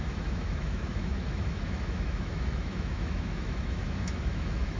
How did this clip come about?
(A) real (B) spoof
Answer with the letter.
B